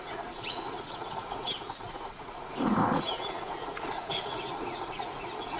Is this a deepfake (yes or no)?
yes